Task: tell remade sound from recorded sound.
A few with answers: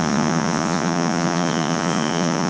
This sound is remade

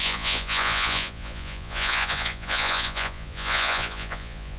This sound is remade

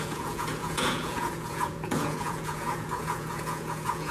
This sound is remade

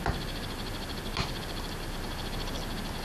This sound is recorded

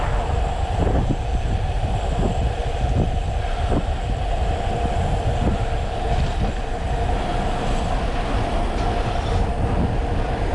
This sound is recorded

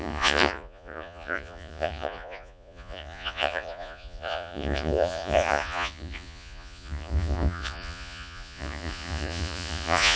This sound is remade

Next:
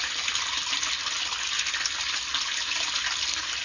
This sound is recorded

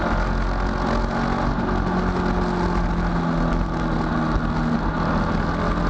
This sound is recorded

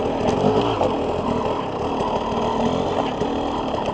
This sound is recorded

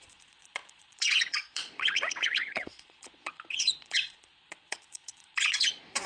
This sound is remade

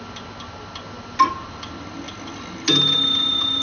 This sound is recorded